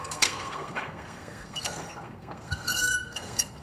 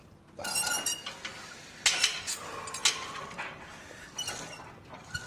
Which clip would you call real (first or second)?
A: second